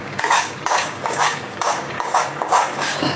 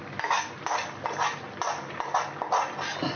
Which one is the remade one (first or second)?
first